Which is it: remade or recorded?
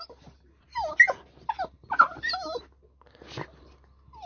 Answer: recorded